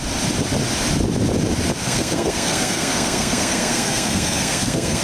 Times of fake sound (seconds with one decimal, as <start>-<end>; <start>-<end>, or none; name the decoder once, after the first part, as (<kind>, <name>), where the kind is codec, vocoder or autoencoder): 1.8-5.0 (codec, SNAC)